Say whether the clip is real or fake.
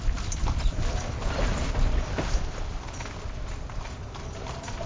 fake